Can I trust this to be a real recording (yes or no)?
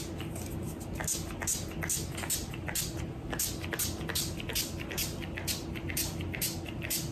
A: yes